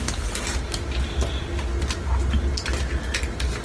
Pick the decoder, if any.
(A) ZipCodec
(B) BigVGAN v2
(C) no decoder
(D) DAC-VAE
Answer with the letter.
C